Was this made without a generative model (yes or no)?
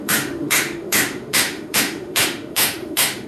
no